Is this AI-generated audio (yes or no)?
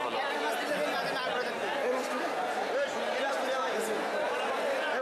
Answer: no